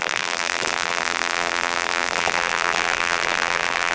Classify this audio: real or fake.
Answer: fake